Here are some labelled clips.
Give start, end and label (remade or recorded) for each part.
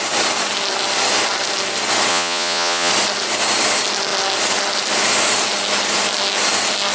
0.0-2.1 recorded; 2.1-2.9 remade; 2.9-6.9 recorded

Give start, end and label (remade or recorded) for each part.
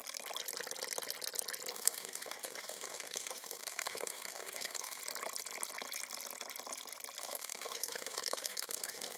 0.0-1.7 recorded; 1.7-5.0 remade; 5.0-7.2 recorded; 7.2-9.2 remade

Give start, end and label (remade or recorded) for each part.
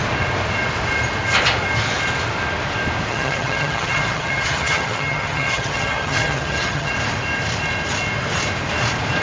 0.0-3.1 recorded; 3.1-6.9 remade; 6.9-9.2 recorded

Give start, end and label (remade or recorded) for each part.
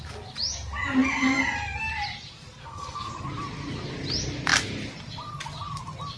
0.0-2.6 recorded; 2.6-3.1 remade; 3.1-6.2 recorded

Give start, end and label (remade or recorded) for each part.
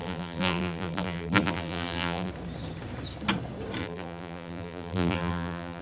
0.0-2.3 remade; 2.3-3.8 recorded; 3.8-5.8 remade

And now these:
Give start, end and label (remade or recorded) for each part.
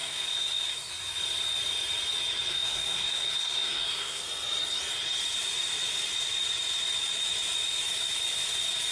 0.0-0.9 remade; 0.9-2.5 recorded; 2.5-4.2 remade; 4.2-8.9 recorded